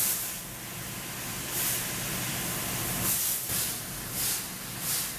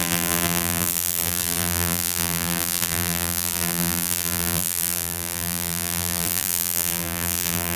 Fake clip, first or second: second